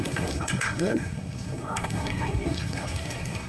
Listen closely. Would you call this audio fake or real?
fake